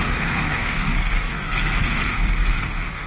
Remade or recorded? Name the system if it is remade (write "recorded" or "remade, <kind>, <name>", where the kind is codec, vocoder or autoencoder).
remade, codec, SNAC